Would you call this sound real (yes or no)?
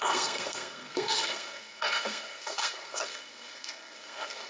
no